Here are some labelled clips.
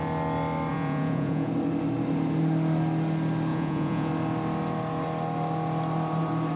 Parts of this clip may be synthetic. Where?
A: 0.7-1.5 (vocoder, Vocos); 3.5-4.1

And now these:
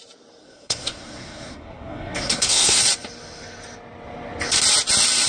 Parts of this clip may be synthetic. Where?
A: 0.4-2.8 (codec, SNAC)

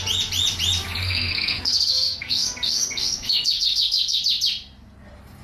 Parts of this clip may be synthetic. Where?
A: 1.0-4.2 (codec, SNAC)

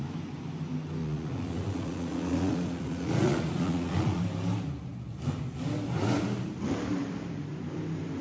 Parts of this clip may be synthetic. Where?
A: 1.0-4.2 (vocoder, Vocos)

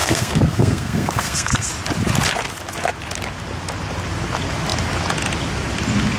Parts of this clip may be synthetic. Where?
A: 0.0-1.7 (codec, SNAC)

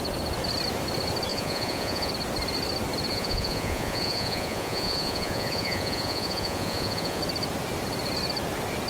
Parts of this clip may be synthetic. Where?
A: 1.3-2.1 (vocoder, Vocos); 3.1-7.2

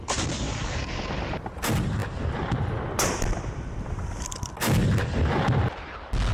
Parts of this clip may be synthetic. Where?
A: none